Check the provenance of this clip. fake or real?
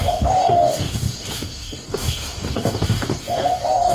fake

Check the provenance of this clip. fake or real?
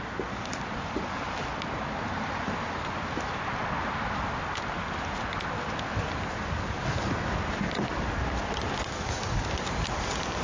real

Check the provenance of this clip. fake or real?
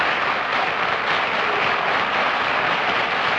real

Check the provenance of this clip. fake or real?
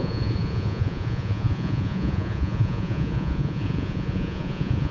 fake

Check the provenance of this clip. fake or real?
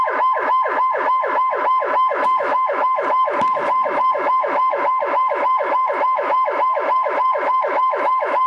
fake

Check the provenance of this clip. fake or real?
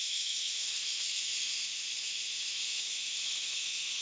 fake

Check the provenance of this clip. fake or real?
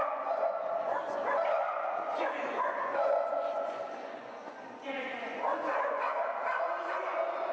fake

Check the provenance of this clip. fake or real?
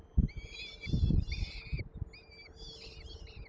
real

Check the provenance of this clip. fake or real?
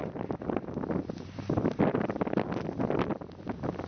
real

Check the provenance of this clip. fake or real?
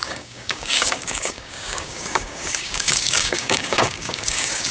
fake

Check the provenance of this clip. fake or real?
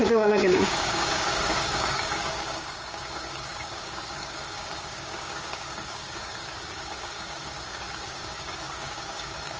fake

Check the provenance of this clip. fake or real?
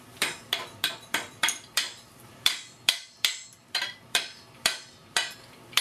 fake